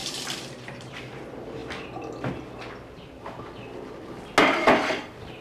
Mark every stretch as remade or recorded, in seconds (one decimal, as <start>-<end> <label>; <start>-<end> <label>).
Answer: 0.0-1.0 remade; 1.0-5.4 recorded